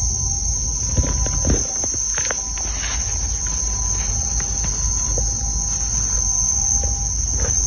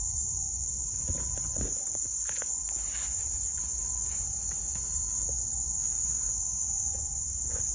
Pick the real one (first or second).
first